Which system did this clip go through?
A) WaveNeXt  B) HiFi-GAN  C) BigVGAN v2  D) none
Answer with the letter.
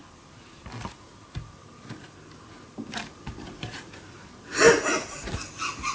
D